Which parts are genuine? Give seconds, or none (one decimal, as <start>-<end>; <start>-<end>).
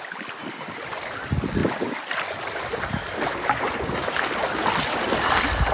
0.0-5.7